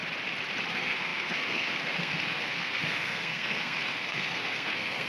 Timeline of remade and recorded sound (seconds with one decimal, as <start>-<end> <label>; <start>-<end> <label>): 0.0-0.7 recorded; 0.7-5.1 remade